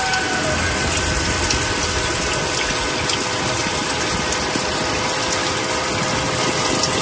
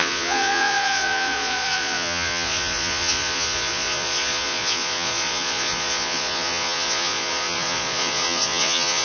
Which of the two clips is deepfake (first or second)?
second